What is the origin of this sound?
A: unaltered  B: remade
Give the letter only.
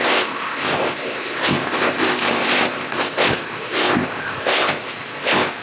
B